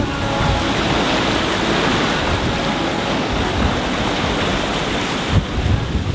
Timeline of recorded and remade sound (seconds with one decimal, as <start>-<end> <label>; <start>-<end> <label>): 0.0-2.9 recorded; 2.9-3.7 remade; 3.7-6.1 recorded